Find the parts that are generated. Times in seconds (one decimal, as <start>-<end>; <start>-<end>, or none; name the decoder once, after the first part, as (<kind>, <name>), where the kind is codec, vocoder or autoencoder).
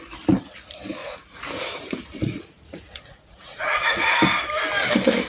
1.0-4.2 (vocoder, Vocos)